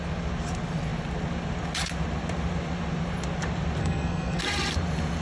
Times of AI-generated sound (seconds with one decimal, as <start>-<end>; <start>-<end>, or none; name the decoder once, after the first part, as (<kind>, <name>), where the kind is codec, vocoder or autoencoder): 3.8-4.4 (codec, SNAC)